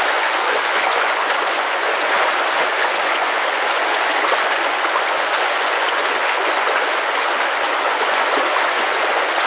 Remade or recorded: remade